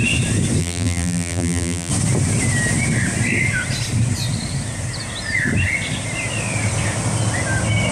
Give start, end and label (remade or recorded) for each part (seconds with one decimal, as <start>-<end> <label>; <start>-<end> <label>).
0.0-0.6 recorded; 0.6-1.9 remade; 1.9-7.9 recorded